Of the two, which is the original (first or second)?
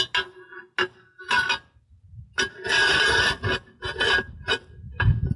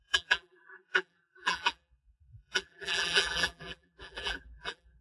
first